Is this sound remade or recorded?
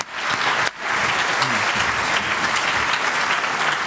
recorded